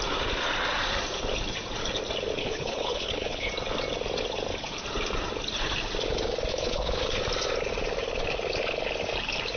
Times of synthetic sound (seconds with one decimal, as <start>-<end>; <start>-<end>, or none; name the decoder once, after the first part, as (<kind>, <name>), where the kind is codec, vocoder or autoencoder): 2.4-3.5 (codec, HILCodec); 6.5-7.2